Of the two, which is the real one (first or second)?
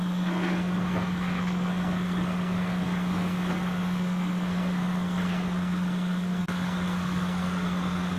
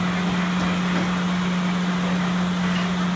second